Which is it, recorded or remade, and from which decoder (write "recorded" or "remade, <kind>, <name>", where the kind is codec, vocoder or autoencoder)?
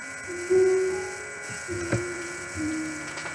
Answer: remade, vocoder, Vocos